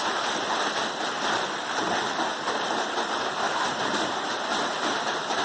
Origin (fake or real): fake